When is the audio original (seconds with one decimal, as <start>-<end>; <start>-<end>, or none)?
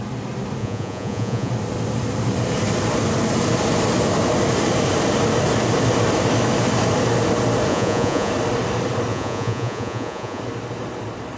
0.0-0.6; 1.5-7.7; 8.3-9.1; 10.4-11.4